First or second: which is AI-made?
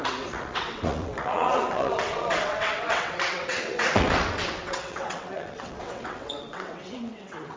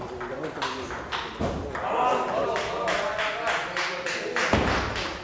first